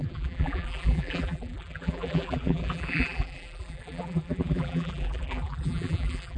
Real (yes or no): no